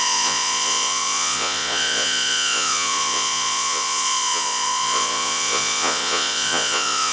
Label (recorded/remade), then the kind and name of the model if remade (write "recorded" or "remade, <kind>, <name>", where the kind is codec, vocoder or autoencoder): remade, vocoder, Vocos